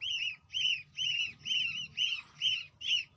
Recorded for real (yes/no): yes